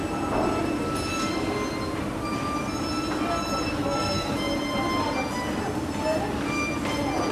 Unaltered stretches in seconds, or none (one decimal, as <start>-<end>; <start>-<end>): 0.0-3.8; 4.3-7.3